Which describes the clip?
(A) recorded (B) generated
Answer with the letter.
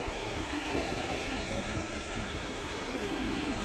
B